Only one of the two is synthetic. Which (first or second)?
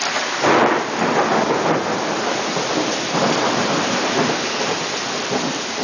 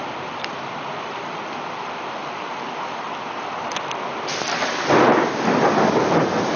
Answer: second